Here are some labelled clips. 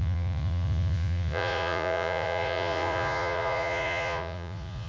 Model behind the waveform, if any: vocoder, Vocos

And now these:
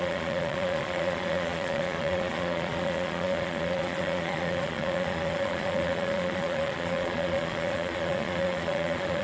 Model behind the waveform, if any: vocoder, Vocos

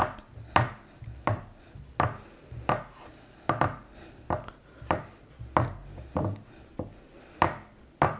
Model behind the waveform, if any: none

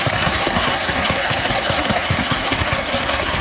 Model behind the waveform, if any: codec, SNAC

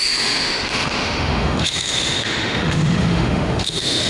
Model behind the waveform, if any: autoencoder, DAC-VAE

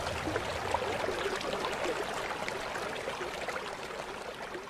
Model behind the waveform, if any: none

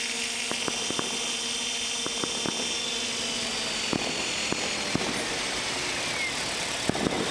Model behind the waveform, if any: none